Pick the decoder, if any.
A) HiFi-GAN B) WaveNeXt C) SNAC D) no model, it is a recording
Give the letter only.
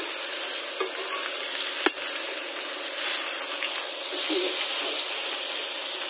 D